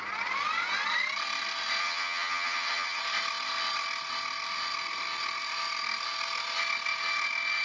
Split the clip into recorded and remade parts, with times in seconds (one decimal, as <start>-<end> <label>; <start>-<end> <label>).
0.0-1.8 recorded; 1.8-3.0 remade; 3.0-7.6 recorded